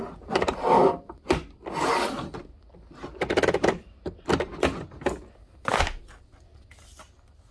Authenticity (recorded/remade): recorded